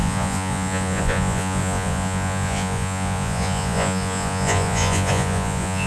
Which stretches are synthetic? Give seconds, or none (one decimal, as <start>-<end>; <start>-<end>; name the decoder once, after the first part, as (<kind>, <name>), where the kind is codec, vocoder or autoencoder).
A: 0.0-5.9 (vocoder, Vocos)